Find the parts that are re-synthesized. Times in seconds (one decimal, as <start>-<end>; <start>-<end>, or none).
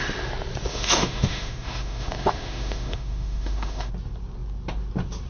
0.7-3.9